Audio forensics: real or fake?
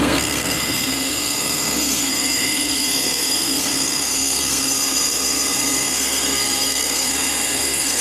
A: fake